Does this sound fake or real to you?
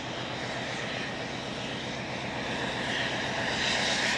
real